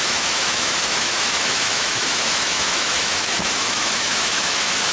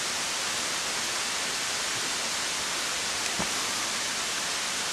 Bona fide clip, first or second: second